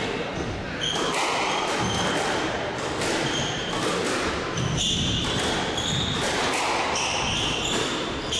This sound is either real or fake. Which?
real